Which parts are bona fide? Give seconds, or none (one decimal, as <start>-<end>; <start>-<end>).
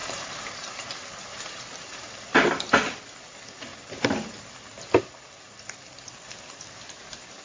2.5-3.7; 4.3-7.4